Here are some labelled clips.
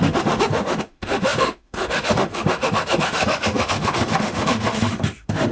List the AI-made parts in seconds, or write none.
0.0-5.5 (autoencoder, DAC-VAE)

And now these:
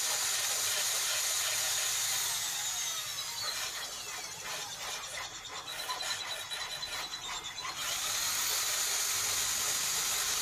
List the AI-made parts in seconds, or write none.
none

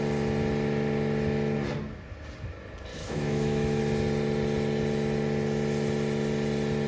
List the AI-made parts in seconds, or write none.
2.9-3.8 (autoencoder, DAC-VAE)

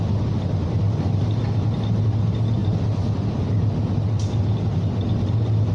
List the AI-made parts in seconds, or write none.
none